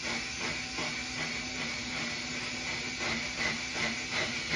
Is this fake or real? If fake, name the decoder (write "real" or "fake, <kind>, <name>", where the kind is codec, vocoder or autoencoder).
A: real